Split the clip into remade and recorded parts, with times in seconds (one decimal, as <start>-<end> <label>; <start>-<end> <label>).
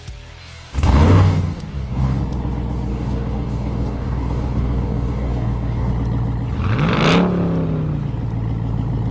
0.0-0.4 recorded; 0.4-2.2 remade; 2.2-2.9 recorded; 2.9-5.9 remade; 5.9-9.1 recorded